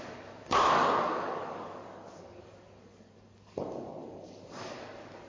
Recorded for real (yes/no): no